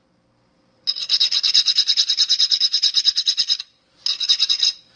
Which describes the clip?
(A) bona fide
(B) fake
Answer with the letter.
A